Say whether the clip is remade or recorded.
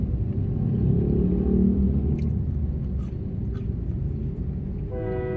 recorded